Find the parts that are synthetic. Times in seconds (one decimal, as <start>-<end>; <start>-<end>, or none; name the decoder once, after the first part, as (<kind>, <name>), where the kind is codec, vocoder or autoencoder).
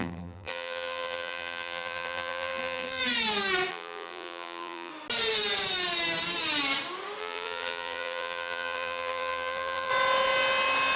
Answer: 0.0-3.0 (vocoder, BigVGAN v2); 3.7-4.9; 7.2-9.9